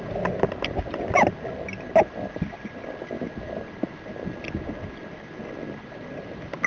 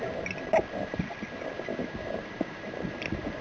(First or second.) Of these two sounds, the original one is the first